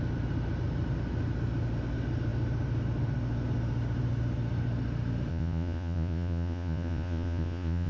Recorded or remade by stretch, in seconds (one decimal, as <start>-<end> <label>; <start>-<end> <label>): 0.0-5.3 recorded; 5.3-7.9 remade